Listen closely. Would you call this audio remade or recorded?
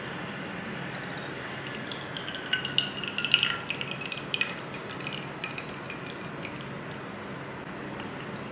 recorded